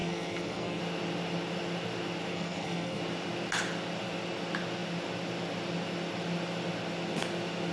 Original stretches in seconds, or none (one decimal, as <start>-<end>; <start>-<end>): 0.8-2.3; 3.0-7.7